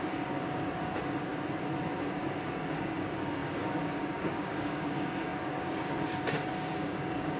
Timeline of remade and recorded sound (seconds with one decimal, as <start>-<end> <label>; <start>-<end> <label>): 0.0-1.3 remade; 1.3-2.2 recorded; 2.2-7.4 remade